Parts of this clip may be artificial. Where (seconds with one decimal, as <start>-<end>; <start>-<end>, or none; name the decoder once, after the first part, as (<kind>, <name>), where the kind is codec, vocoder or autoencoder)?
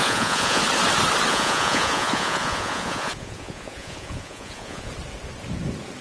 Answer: 0.0-0.6 (vocoder, Vocos); 1.3-4.9